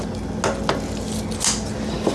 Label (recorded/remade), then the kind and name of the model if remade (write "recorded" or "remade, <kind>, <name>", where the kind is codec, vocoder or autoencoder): recorded